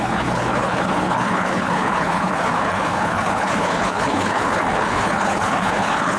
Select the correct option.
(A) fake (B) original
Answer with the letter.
A